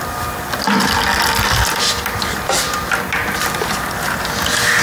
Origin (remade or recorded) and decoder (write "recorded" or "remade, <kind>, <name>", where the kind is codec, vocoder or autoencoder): recorded